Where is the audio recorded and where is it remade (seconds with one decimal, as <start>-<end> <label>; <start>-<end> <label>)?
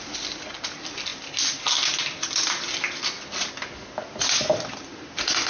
0.0-5.5 recorded